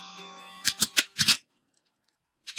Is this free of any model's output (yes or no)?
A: no